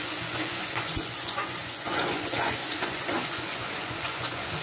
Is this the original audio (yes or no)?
no